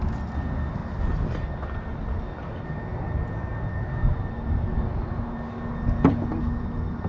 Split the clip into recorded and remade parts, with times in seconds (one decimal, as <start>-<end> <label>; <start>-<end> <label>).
0.0-7.1 recorded